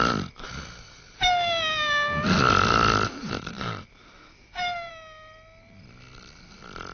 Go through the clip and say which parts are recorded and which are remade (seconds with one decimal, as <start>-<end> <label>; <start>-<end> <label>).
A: 0.0-3.2 recorded; 3.2-4.9 remade; 4.9-6.9 recorded